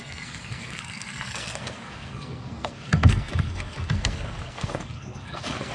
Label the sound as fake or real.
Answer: fake